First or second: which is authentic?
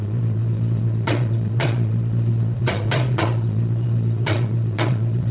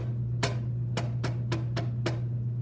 second